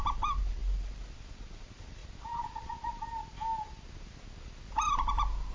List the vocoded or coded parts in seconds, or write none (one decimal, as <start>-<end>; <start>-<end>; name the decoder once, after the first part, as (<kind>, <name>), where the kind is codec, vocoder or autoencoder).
none